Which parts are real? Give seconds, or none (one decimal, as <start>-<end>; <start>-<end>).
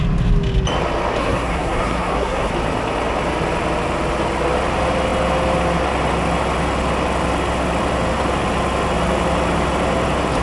0.0-1.2; 2.5-10.4